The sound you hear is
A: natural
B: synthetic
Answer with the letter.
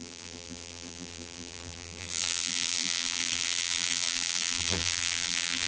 B